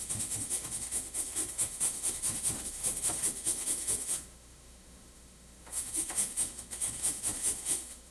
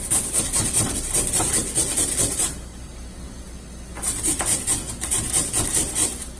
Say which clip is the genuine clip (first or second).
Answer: second